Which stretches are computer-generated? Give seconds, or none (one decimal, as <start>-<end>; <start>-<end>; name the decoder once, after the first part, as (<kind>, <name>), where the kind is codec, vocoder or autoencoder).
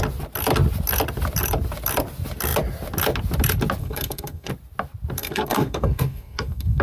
3.8-4.5 (codec, SNAC); 5.2-6.8